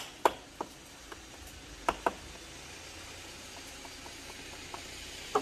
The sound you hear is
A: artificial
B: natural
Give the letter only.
B